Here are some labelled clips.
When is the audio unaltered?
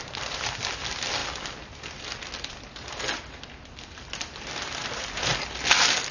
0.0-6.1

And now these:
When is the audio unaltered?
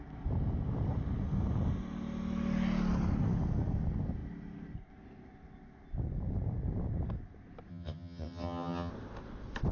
0.0-7.7; 8.9-9.7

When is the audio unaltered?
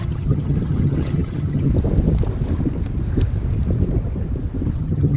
1.7-4.8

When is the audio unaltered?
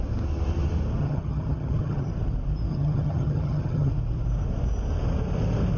0.0-1.0; 2.1-2.7; 3.9-5.8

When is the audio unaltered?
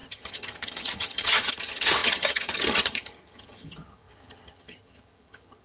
none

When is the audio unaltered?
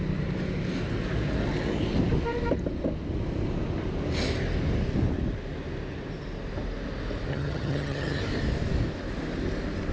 0.0-7.3; 8.2-9.9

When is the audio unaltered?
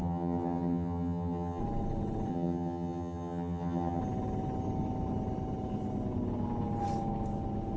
1.6-2.3; 4.0-7.8